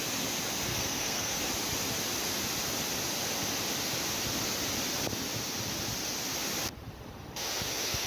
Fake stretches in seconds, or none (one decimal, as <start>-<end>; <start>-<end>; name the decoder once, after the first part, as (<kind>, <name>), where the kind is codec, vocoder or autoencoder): 0.7-1.4 (codec, SNAC)